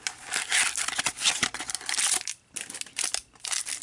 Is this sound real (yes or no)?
yes